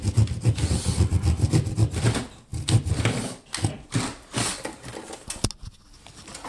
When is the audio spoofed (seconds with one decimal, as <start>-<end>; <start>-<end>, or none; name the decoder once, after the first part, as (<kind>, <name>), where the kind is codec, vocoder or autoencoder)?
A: none